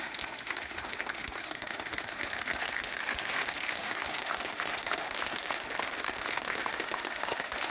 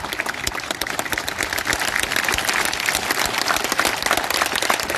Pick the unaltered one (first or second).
second